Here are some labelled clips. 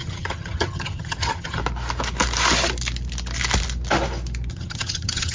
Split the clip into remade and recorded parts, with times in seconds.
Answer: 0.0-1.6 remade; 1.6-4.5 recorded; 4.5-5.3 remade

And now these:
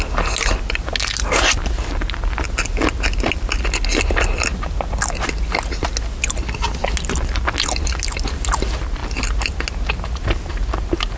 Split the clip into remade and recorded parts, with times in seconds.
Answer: 0.0-11.2 recorded

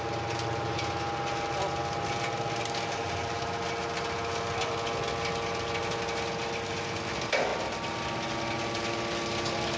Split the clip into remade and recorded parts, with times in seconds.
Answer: 0.0-9.8 recorded

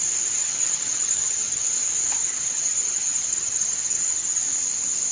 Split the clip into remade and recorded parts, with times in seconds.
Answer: 0.0-0.4 recorded; 0.4-1.6 remade; 1.6-2.2 recorded; 2.2-4.4 remade; 4.4-5.1 recorded

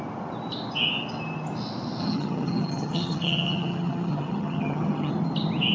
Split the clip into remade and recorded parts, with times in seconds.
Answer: 0.0-2.0 recorded; 2.0-5.1 remade; 5.1-5.7 recorded

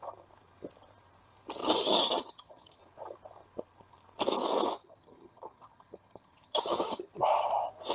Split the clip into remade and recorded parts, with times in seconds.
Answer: 0.0-1.6 recorded; 1.6-2.8 remade; 2.8-4.8 recorded; 4.8-7.1 remade; 7.1-7.9 recorded

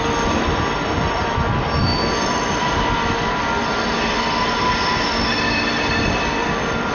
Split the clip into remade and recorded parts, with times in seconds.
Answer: 0.0-6.9 recorded

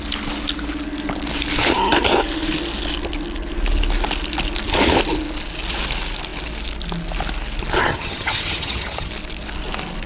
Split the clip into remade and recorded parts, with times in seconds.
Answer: 0.0-7.9 recorded; 7.9-9.1 remade; 9.1-10.1 recorded